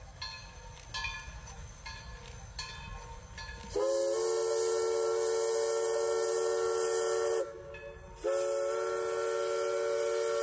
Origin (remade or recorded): recorded